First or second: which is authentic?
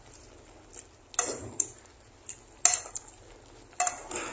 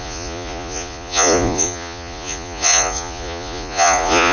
first